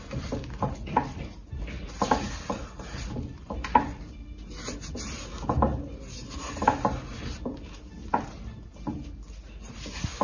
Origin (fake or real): real